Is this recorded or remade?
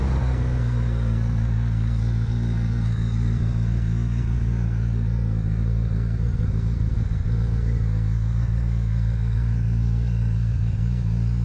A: remade